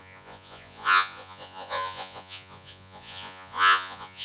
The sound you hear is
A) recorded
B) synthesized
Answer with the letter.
B